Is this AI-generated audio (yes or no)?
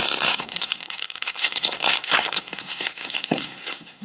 yes